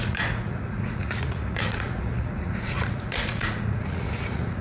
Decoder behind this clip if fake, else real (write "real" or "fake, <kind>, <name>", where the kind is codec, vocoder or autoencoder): fake, vocoder, Vocos